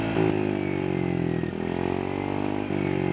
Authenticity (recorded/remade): recorded